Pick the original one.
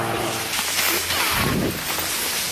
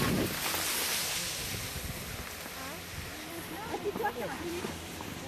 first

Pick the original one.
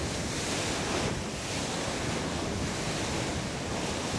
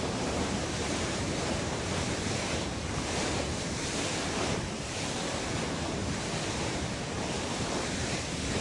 first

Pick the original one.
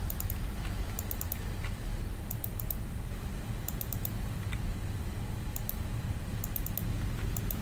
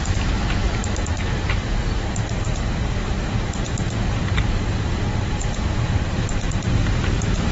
first